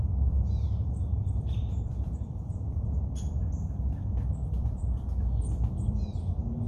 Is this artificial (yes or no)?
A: yes